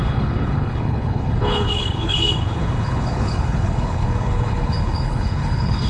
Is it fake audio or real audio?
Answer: fake